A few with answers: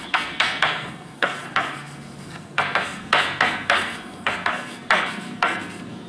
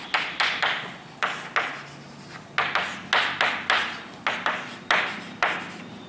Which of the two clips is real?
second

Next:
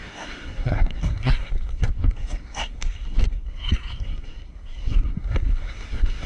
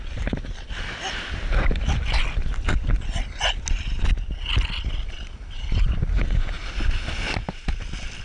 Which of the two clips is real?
second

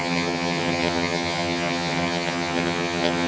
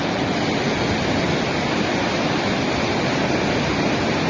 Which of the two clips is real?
second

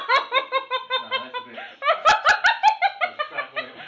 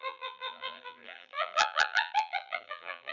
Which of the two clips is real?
first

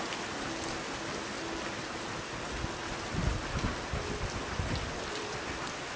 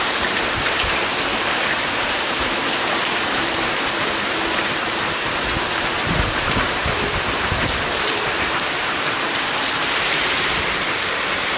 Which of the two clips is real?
first